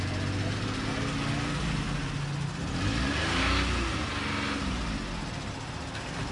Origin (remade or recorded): recorded